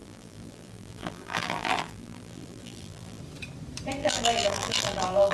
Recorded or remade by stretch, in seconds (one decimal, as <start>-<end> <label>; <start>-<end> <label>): 0.0-3.2 remade; 3.2-4.0 recorded; 4.0-5.3 remade